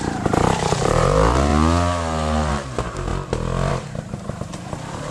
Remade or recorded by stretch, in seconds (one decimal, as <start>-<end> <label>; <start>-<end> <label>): 0.0-1.5 remade; 1.5-2.5 recorded; 2.5-3.1 remade; 3.1-3.7 recorded; 3.7-5.1 remade